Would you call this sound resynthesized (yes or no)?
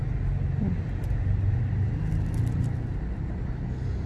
no